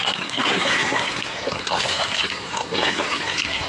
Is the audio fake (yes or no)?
yes